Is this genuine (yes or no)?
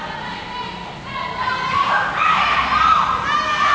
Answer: yes